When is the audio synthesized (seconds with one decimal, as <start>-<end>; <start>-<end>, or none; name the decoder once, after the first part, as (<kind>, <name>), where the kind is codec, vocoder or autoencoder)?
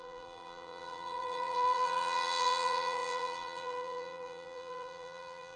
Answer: 0.0-5.6 (vocoder, BigVGAN v2)